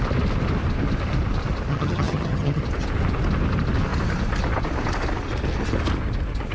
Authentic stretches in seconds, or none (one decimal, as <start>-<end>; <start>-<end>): 0.0-1.7; 2.6-6.5